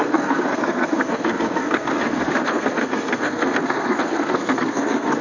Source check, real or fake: fake